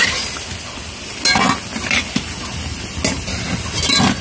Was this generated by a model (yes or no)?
no